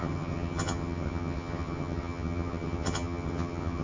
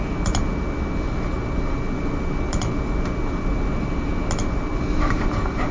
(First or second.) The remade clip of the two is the first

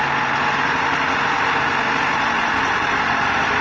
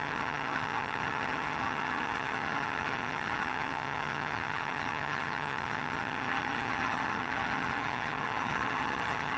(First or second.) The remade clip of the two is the second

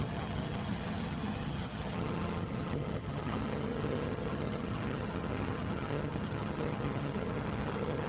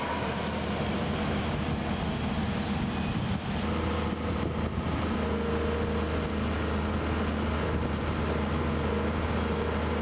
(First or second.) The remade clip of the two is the first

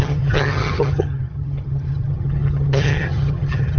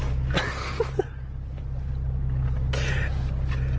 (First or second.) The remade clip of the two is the first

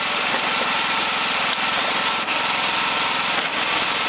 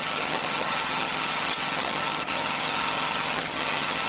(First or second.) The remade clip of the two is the second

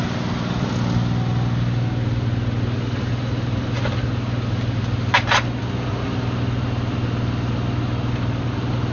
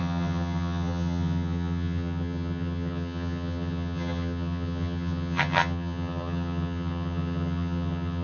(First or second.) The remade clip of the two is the second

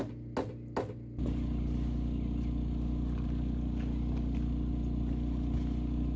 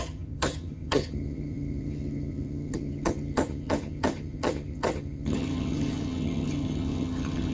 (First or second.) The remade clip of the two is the second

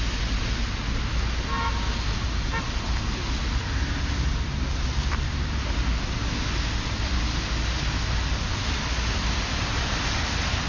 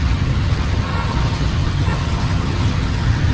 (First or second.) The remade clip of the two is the second